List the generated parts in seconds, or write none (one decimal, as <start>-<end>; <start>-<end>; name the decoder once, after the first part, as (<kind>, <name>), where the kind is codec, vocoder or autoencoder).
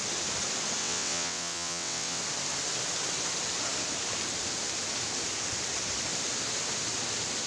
0.8-2.2 (vocoder, WaveNeXt)